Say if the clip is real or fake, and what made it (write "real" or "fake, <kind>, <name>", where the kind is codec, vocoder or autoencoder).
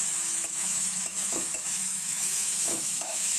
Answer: fake, autoencoder, DAC-VAE